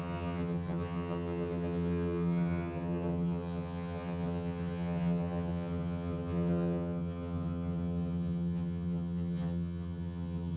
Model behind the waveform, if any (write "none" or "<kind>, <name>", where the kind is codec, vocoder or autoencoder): vocoder, HiFi-GAN